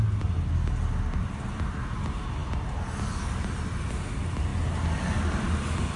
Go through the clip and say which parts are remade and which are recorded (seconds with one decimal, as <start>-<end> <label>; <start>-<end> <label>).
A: 0.0-6.0 recorded